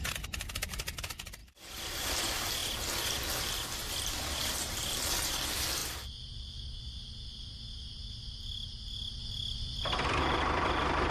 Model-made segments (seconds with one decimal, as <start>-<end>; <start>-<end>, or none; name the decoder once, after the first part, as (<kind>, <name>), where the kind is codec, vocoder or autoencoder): 0.0-2.6 (vocoder, BigVGAN v2); 3.4-5.8; 9.2-11.1